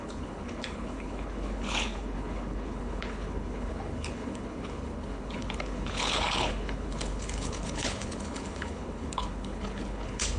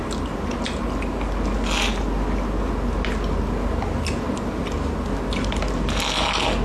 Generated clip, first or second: first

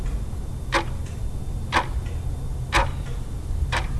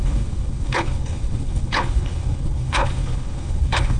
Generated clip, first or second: second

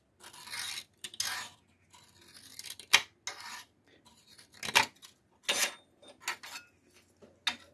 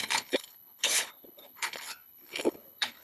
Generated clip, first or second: second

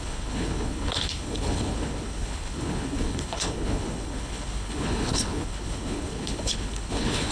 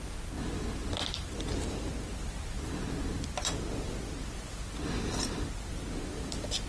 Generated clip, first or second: first